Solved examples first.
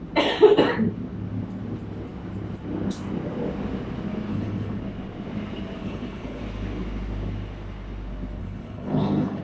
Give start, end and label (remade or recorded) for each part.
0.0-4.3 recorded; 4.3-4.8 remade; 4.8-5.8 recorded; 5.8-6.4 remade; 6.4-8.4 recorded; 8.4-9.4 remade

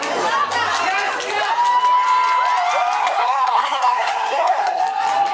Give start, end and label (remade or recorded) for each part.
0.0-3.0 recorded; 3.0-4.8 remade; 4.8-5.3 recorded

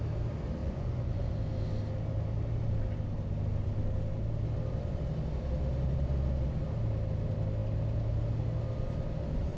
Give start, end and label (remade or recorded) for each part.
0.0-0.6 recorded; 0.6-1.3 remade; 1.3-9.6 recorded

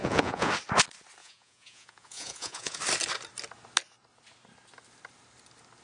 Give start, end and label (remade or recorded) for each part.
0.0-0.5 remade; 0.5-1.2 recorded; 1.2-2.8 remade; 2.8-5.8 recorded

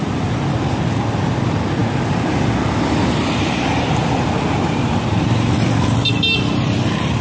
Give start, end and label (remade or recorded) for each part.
0.0-7.2 recorded

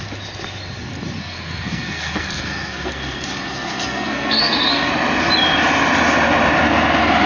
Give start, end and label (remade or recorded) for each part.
0.0-1.2 recorded; 1.2-4.9 remade; 4.9-7.3 recorded